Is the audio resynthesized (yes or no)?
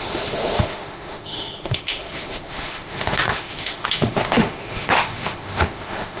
yes